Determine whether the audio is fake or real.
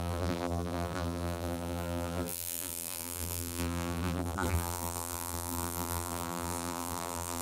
fake